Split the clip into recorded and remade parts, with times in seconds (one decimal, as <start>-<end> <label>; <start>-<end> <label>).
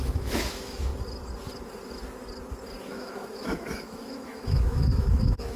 0.0-0.9 remade; 0.9-2.8 recorded; 2.8-5.6 remade